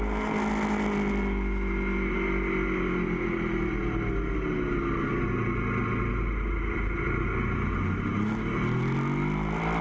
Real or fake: real